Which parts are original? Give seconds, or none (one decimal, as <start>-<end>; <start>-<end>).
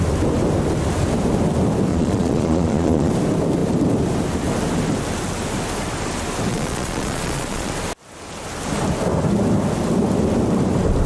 0.0-1.9; 3.1-6.5; 7.7-11.1